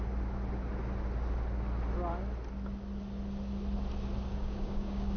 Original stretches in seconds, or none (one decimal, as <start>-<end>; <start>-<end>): 0.0-4.3